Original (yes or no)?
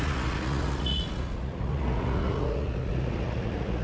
no